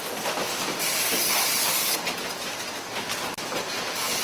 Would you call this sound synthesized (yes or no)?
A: no